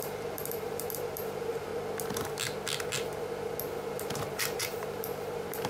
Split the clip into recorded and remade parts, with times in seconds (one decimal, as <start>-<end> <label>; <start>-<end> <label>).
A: 0.0-1.7 remade; 1.7-3.9 recorded; 3.9-5.7 remade